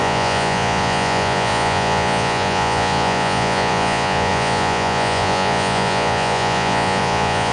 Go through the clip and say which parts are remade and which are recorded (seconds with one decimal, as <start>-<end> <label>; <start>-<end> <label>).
0.0-7.5 remade

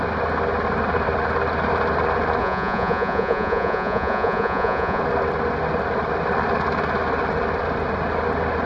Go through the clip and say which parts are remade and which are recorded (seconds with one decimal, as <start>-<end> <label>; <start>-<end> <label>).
0.0-2.4 recorded; 2.4-5.0 remade; 5.0-8.7 recorded

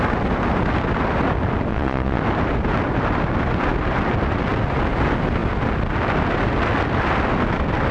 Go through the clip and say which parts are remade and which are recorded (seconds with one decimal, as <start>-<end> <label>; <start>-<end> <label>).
0.0-1.7 recorded; 1.7-2.2 remade; 2.2-7.9 recorded

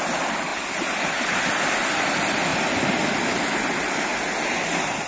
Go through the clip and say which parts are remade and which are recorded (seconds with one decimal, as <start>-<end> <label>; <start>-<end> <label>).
0.0-5.1 recorded